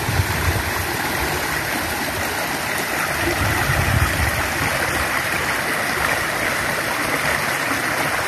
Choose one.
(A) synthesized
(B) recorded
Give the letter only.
A